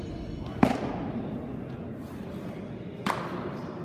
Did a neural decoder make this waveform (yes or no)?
no